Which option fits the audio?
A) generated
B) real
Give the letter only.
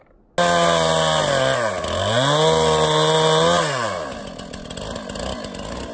B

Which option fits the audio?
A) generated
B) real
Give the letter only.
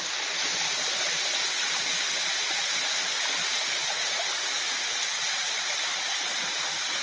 B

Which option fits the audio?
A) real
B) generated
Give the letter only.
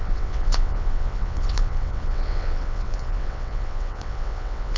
B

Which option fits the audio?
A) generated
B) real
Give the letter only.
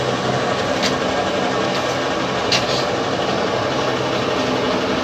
B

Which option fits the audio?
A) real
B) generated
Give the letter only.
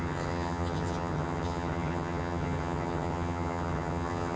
B